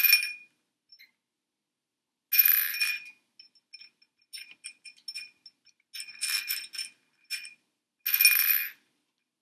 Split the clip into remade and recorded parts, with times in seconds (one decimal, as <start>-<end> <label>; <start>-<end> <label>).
0.0-9.4 recorded